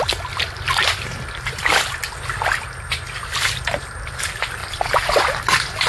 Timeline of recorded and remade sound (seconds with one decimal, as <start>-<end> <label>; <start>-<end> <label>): 0.0-5.9 recorded